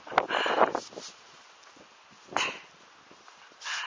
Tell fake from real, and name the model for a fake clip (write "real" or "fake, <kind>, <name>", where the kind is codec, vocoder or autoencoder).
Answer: real